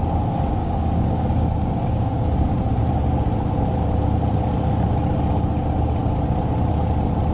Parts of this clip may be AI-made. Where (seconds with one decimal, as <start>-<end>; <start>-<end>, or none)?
0.6-2.8